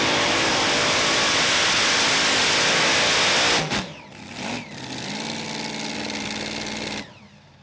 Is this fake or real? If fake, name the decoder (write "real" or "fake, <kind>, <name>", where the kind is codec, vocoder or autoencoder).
real